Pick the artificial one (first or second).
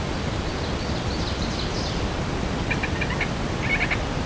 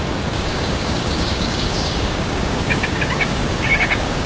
second